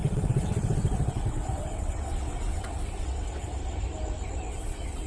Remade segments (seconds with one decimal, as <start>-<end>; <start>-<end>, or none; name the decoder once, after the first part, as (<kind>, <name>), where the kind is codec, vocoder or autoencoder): 0.0-3.6 (vocoder, WaveNeXt); 4.5-5.1